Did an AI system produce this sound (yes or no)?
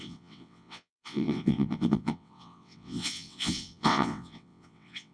yes